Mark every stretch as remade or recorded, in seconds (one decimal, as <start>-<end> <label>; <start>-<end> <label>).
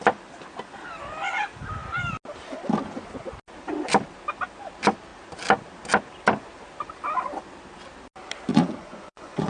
0.0-8.5 recorded; 8.5-9.5 remade